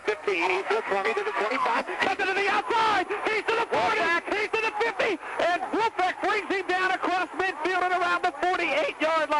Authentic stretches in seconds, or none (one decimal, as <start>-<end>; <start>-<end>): 2.2-9.4